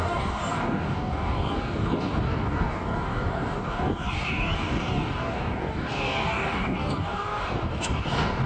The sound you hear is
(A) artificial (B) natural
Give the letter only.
A